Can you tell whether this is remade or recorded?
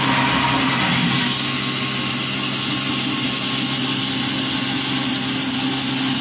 recorded